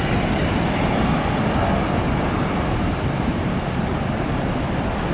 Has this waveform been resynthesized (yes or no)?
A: no